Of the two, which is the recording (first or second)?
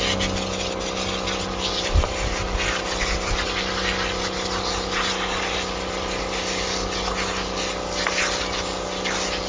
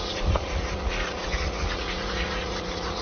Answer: first